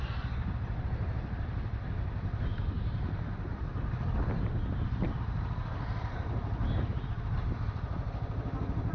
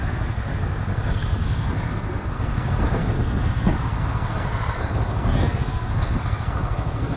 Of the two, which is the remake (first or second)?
second